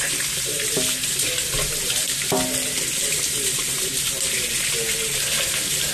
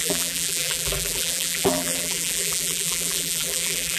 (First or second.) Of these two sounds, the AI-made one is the second